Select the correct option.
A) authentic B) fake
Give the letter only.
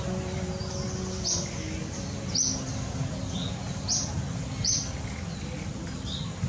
A